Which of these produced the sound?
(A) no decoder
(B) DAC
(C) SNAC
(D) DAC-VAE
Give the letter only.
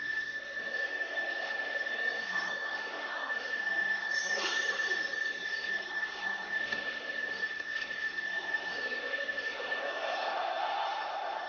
C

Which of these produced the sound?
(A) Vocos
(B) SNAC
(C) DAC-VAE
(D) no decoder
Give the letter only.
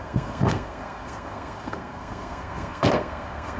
B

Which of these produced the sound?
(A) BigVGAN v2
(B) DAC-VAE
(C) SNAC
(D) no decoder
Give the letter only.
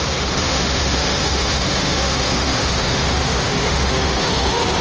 B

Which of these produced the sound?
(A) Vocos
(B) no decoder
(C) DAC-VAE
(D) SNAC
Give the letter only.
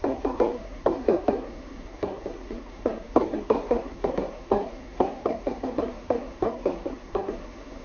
D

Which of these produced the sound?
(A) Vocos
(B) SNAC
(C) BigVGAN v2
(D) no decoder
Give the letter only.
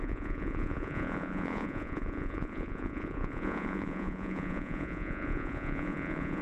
A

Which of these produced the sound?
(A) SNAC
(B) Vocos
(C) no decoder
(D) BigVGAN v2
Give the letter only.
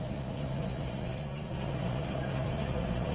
B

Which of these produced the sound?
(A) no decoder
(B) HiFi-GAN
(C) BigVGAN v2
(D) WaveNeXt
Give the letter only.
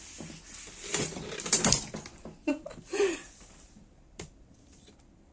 C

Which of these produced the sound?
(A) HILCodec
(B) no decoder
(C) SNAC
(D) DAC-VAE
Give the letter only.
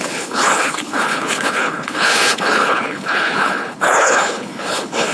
A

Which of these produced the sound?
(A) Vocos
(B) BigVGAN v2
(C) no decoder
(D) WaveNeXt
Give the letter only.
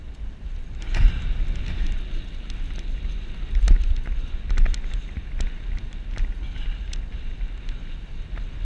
C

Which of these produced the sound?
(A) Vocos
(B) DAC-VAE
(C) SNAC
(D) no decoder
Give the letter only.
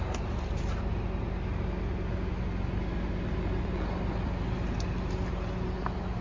D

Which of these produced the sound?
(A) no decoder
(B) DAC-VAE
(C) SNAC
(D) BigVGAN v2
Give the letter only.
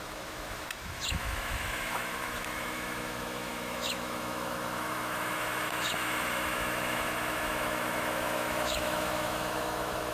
B